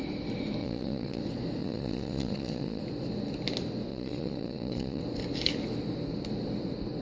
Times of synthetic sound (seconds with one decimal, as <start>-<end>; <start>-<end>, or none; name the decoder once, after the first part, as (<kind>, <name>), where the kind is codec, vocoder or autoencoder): 0.6-1.2 (vocoder, Vocos); 1.6-2.8; 3.9-5.0